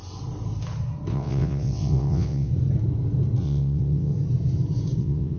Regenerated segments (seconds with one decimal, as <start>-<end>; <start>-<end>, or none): 1.1-2.5; 3.4-4.1; 5.0-5.4